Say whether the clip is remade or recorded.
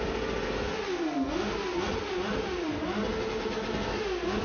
recorded